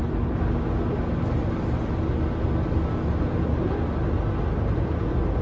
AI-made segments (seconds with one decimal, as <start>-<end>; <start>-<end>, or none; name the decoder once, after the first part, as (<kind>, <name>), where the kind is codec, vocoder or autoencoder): none